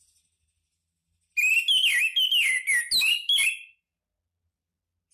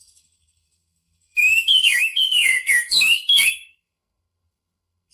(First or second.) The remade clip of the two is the second